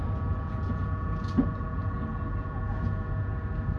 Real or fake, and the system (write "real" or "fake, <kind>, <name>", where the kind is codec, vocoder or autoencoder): real